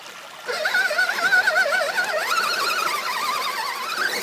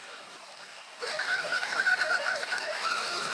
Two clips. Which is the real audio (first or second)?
first